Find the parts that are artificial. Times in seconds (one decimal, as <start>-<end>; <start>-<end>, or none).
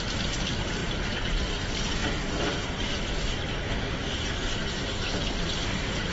none